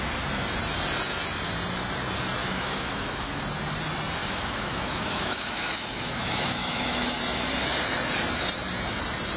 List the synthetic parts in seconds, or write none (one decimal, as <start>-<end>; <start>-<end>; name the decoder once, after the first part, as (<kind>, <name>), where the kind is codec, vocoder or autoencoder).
2.4-3.4 (autoencoder, DAC-VAE); 4.2-7.2